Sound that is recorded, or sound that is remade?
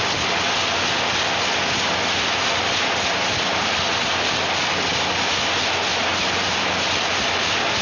recorded